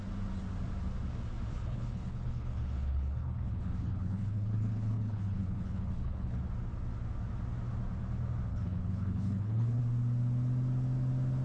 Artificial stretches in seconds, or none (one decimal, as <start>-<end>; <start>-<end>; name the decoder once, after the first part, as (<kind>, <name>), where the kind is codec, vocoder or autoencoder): 1.5-6.4 (codec, HILCodec); 8.5-9.8